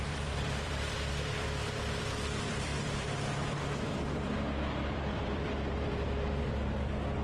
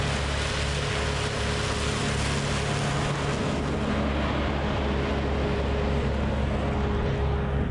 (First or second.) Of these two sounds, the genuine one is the second